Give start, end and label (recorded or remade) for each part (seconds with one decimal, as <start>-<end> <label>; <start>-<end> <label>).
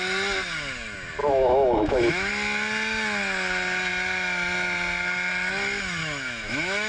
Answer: 0.0-1.2 recorded; 1.2-2.3 remade; 2.3-6.0 recorded; 6.0-6.9 remade